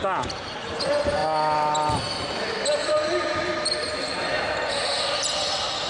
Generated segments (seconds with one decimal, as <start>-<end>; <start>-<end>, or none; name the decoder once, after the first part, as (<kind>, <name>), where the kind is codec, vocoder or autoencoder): none

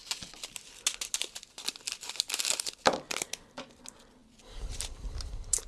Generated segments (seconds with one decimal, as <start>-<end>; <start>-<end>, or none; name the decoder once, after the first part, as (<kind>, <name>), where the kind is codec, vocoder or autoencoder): none

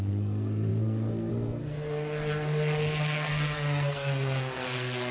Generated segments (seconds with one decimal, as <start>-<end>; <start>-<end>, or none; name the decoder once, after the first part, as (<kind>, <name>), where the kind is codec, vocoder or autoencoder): 0.0-5.1 (codec, SNAC)

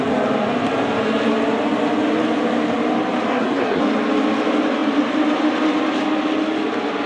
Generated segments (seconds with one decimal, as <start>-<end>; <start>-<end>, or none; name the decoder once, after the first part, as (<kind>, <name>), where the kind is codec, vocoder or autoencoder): 3.3-3.8 (codec, SNAC)

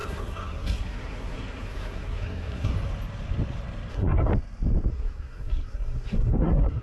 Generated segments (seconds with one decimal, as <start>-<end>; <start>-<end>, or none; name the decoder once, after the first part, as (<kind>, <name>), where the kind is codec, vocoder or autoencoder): 0.0-2.7 (codec, SNAC); 3.9-4.3; 4.9-6.8

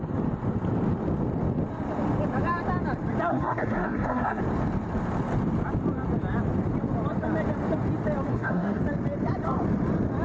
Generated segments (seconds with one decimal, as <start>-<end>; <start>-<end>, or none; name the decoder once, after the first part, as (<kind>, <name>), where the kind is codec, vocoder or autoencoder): 3.3-4.4 (codec, SNAC); 8.3-8.8

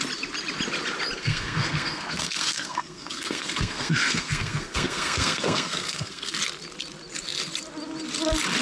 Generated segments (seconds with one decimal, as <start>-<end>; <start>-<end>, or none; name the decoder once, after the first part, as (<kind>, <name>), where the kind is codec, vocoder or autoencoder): 1.2-6.4 (codec, SNAC)

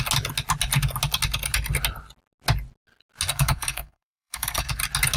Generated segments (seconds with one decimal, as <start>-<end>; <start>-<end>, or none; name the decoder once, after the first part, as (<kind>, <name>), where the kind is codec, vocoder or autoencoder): 3.3-4.7 (codec, SNAC)